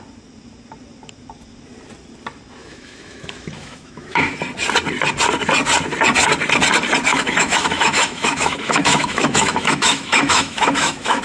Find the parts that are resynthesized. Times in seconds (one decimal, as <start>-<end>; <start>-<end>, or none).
2.6-4.3; 7.1-11.2